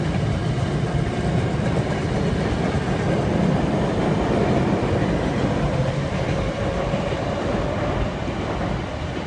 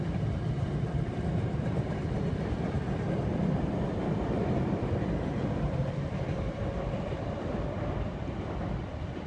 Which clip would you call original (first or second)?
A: first